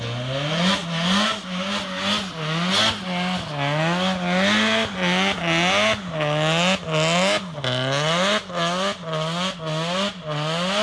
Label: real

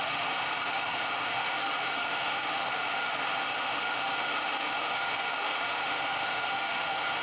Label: fake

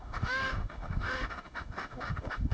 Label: fake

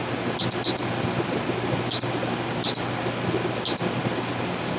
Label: real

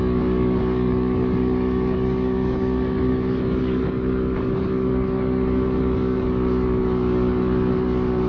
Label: fake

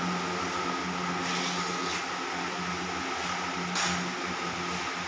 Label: real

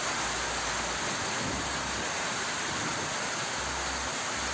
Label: real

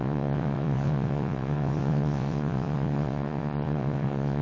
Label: fake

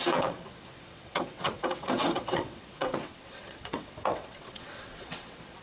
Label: fake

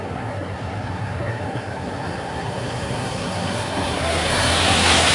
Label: fake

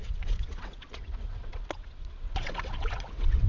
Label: fake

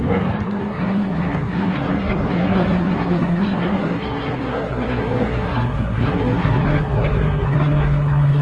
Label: fake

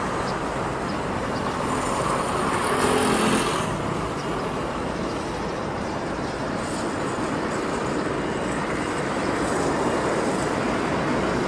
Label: real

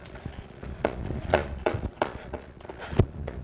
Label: fake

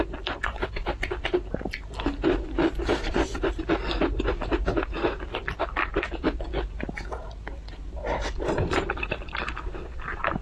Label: real